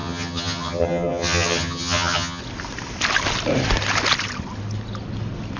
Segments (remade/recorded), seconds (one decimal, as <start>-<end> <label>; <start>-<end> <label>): 0.0-2.4 remade; 2.4-5.6 recorded